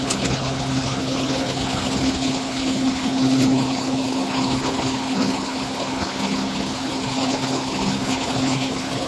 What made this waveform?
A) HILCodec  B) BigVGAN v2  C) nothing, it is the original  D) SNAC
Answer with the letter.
A